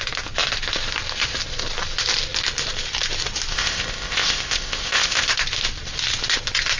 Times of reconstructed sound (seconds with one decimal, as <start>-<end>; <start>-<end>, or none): 3.5-5.3